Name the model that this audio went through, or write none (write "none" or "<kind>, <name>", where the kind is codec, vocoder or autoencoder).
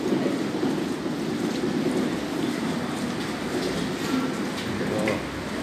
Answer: none